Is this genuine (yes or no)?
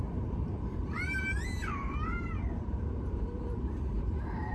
no